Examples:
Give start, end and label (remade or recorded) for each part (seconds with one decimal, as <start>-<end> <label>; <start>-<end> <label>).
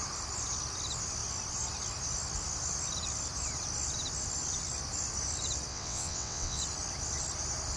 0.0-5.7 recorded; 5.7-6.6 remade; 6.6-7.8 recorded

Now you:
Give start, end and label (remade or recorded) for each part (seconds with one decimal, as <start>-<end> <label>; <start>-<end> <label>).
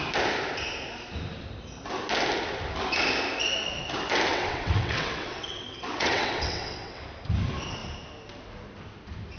0.0-4.3 recorded; 4.3-7.0 remade; 7.0-9.4 recorded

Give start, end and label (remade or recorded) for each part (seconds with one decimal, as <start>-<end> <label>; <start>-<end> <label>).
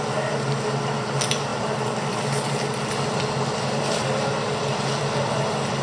0.0-5.8 recorded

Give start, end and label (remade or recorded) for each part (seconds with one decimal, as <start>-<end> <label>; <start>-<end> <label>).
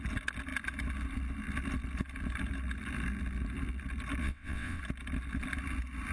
0.0-4.2 recorded; 4.2-4.8 remade; 4.8-6.1 recorded